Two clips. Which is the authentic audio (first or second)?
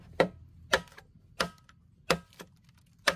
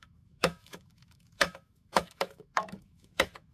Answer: first